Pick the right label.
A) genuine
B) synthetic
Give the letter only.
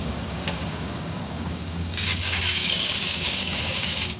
B